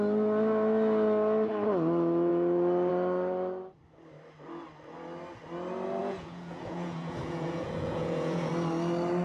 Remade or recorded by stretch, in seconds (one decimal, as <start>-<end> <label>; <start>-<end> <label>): 0.0-6.0 recorded; 6.0-8.5 remade; 8.5-9.2 recorded